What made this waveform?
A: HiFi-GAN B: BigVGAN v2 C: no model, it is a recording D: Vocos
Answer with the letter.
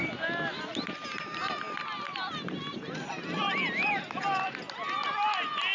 C